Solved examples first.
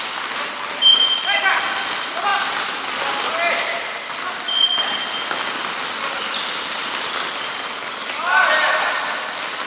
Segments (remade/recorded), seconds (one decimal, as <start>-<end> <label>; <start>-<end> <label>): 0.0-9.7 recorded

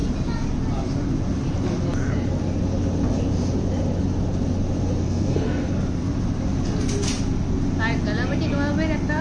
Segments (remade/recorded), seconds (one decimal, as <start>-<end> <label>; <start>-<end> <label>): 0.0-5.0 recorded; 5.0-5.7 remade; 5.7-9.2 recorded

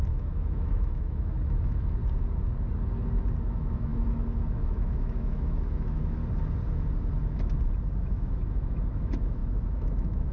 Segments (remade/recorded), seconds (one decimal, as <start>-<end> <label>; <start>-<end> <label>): 0.0-2.0 remade; 2.0-3.4 recorded; 3.4-6.2 remade; 6.2-8.0 recorded; 8.0-10.3 remade